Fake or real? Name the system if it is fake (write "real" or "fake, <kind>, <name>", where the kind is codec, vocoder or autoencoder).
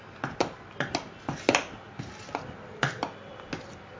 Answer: real